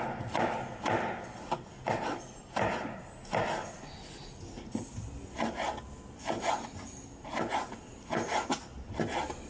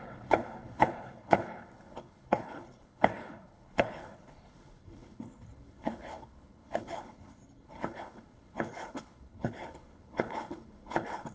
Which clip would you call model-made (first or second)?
second